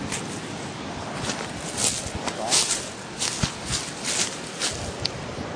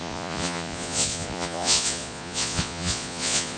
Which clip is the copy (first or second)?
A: second